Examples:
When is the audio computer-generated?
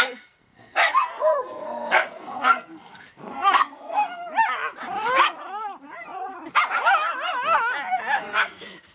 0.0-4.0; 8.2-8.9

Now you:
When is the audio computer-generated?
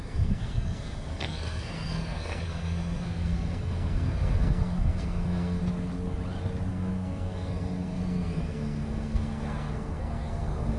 0.0-5.6; 6.7-10.8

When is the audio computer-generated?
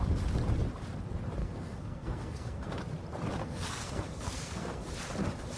1.4-2.8; 3.4-4.8